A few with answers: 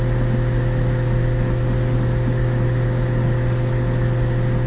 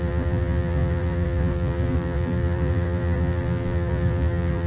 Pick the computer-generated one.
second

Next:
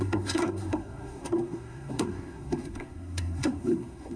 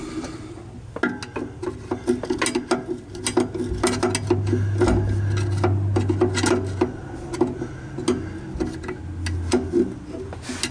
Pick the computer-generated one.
first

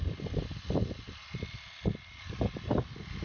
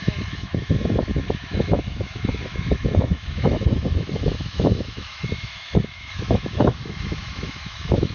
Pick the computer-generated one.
second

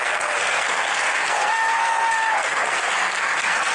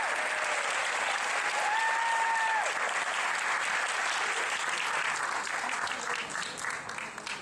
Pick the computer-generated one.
first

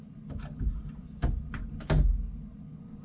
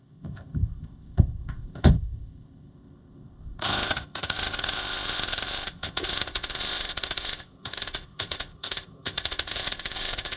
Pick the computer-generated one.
second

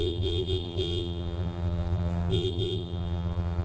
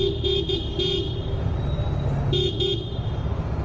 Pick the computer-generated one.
first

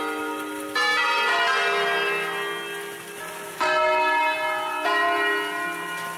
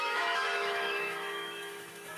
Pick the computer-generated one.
second